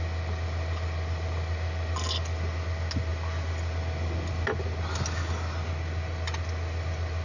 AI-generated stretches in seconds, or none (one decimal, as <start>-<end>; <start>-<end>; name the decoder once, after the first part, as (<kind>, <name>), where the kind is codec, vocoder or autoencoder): none

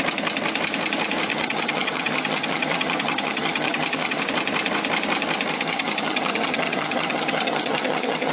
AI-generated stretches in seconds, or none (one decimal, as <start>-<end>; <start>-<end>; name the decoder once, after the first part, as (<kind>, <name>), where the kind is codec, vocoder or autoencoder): 1.3-4.2 (vocoder, HiFi-GAN); 5.5-8.3

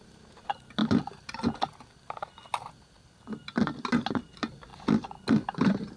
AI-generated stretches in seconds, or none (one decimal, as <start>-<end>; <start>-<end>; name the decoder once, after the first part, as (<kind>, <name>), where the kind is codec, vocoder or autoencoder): none

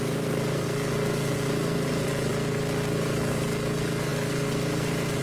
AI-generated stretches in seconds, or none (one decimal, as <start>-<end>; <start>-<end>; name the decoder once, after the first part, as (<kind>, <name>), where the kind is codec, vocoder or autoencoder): 0.0-5.2 (codec, SNAC)

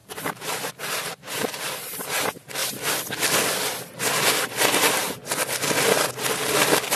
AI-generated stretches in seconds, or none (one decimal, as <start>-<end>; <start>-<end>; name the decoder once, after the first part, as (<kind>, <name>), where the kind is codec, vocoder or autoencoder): 0.0-2.6 (vocoder, BigVGAN v2); 4.0-5.2; 6.2-7.0

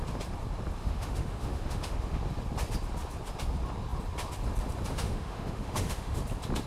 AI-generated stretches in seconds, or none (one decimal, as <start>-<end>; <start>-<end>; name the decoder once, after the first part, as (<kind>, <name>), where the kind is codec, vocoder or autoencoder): 0.8-2.2 (autoencoder, DAC-VAE); 4.9-6.2

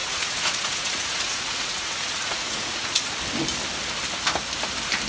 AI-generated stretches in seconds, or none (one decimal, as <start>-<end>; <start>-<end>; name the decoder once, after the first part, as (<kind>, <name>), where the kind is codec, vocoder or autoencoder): 0.0-3.1 (vocoder, Vocos)

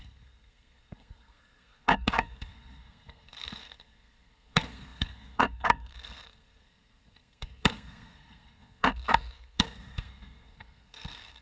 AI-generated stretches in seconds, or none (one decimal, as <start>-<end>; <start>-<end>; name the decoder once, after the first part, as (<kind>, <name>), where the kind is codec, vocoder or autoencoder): 0.0-11.4 (codec, SNAC)